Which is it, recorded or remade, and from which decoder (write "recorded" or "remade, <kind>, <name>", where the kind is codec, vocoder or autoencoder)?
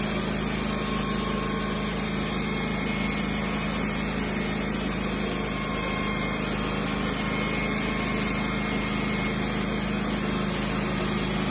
recorded